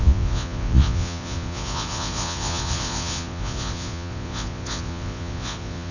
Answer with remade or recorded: remade